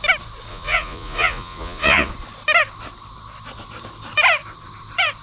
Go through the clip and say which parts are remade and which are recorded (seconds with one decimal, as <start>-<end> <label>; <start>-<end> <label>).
0.0-0.5 recorded; 0.5-2.1 remade; 2.1-5.2 recorded